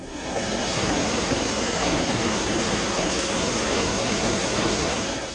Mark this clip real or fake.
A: fake